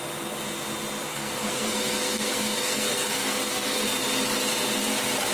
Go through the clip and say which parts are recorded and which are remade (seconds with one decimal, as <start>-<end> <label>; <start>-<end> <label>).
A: 0.0-1.1 recorded; 1.1-3.8 remade; 3.8-5.3 recorded